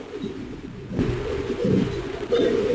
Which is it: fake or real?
fake